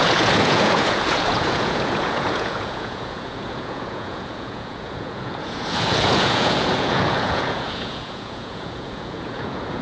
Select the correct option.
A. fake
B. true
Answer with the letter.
A